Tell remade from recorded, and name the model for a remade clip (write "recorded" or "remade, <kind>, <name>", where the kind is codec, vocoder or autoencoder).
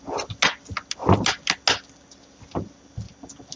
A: recorded